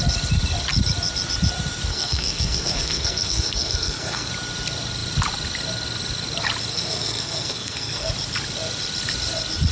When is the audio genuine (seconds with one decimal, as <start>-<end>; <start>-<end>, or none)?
0.0-1.9; 4.3-6.7; 8.1-9.7